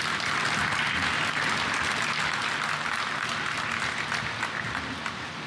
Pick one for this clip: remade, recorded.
recorded